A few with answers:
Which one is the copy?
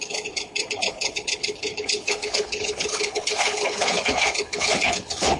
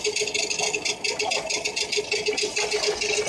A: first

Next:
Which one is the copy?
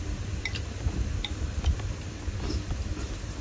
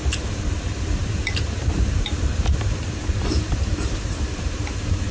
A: second